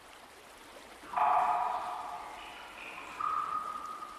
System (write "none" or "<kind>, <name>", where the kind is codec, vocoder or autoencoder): none